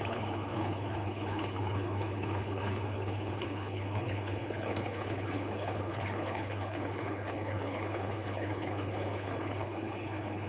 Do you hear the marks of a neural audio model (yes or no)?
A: yes